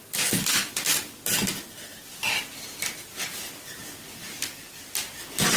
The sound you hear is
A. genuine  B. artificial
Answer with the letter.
A